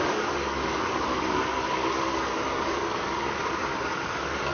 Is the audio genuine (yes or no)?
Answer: no